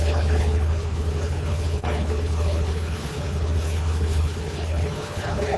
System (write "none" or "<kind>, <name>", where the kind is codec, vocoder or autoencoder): codec, HILCodec